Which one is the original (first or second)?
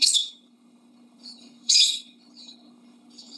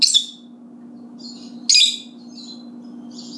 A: second